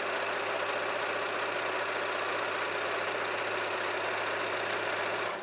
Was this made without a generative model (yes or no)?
yes